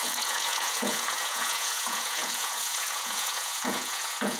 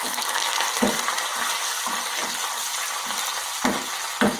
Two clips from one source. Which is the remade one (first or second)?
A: first